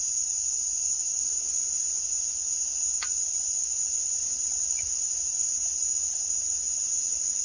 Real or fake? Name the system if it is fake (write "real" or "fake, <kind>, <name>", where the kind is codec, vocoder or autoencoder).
real